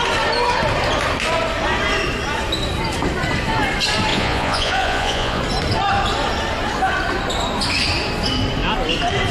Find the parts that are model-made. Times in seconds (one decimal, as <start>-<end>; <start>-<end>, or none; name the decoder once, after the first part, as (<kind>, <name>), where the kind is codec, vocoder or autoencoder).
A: 4.1-5.4 (vocoder, Vocos)